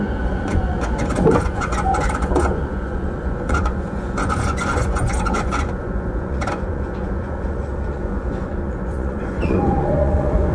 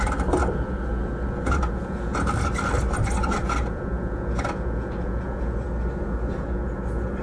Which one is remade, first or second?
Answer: first